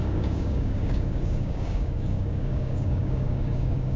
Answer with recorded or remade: remade